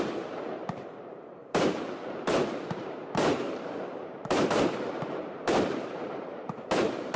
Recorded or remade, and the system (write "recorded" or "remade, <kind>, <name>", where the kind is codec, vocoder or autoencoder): remade, vocoder, BigVGAN v2